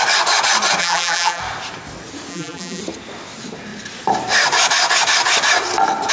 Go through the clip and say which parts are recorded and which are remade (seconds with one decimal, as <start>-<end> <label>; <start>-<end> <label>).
0.0-0.8 recorded; 0.8-1.4 remade; 1.4-2.3 recorded; 2.3-2.8 remade; 2.8-6.1 recorded